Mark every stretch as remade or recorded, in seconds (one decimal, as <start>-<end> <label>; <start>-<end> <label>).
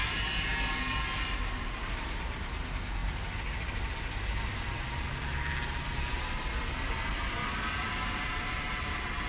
0.0-7.4 recorded; 7.4-8.6 remade; 8.6-9.3 recorded